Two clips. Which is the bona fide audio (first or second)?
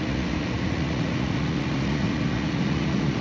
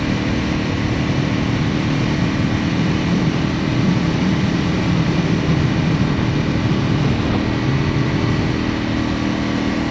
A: second